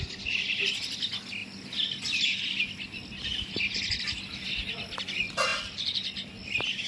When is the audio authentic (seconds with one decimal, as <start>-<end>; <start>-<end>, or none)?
0.0-6.9